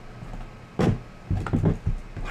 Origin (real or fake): real